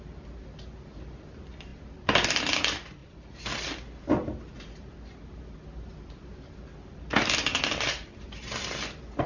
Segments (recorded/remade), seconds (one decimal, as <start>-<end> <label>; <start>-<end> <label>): 0.0-9.3 recorded